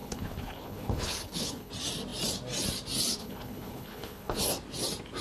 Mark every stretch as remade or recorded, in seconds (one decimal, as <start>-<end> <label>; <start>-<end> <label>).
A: 0.0-1.7 remade; 1.7-3.2 recorded; 3.2-4.4 remade; 4.4-5.2 recorded